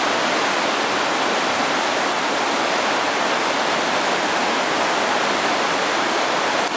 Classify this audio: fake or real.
real